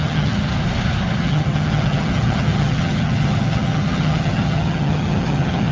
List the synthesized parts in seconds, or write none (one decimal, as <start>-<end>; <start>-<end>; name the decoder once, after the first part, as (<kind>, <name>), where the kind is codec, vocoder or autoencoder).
0.0-0.5 (vocoder, HiFi-GAN); 1.2-5.7